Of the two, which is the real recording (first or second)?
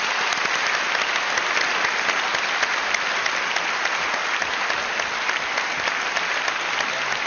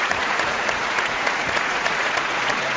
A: first